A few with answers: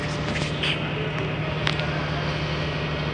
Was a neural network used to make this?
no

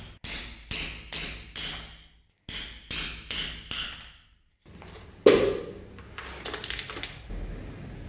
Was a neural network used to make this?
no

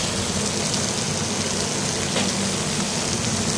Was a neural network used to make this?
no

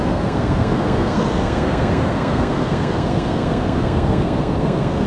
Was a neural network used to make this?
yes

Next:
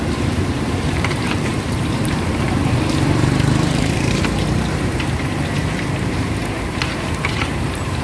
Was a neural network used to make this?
yes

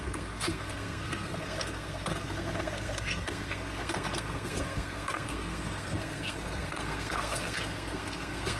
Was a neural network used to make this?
yes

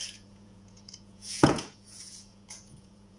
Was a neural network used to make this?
yes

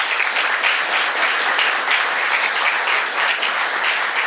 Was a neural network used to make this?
no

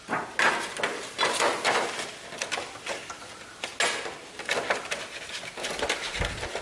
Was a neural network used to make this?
no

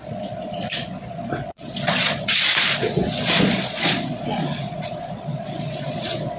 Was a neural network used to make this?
yes